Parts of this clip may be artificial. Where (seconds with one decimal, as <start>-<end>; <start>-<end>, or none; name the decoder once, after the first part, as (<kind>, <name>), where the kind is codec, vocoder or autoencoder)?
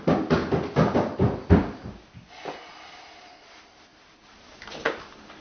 0.0-0.4 (vocoder, BigVGAN v2); 3.4-3.9; 4.9-5.4